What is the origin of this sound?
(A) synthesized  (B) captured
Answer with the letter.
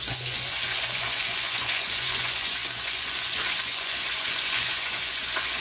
A